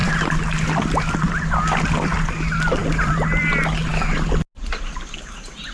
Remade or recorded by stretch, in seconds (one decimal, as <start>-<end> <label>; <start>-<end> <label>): 0.0-5.7 recorded